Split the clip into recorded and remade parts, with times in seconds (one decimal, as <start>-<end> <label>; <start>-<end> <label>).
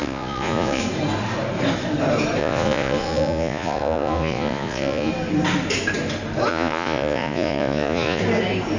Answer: 0.0-0.8 remade; 0.8-2.4 recorded; 2.4-5.1 remade; 5.1-6.5 recorded; 6.5-8.2 remade; 8.2-8.8 recorded